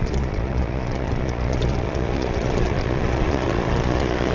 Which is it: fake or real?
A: fake